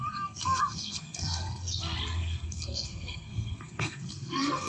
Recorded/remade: remade